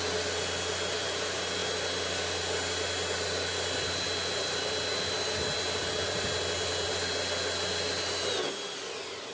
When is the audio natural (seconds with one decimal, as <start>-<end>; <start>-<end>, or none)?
0.0-9.3